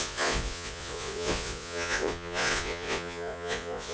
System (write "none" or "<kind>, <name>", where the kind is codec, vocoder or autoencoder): vocoder, Vocos